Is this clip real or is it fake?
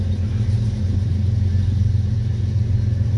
real